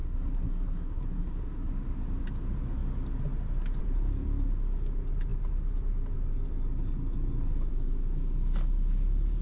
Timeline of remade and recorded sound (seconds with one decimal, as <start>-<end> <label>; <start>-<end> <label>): 0.0-1.7 remade; 1.7-9.4 recorded